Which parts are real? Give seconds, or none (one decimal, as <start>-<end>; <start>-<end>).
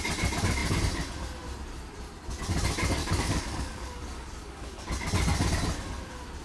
0.0-3.0; 4.9-6.4